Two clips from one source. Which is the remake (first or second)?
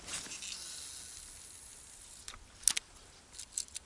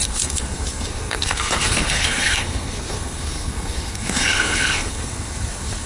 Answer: second